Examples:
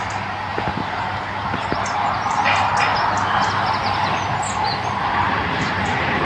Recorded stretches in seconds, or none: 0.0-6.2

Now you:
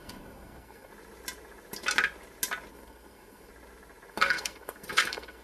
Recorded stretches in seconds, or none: 0.9-2.7; 3.5-4.1